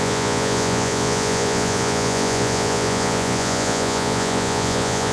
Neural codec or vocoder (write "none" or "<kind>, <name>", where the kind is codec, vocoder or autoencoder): vocoder, Vocos